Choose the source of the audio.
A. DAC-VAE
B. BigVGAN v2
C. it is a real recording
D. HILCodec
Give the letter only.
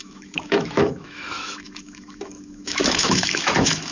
A